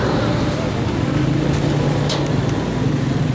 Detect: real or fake real